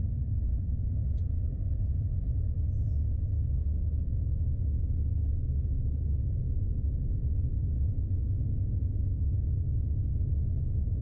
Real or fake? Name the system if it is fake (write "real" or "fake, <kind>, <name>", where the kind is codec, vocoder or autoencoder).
real